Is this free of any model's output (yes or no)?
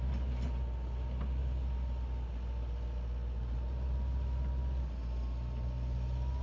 yes